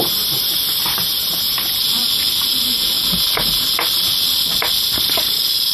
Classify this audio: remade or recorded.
recorded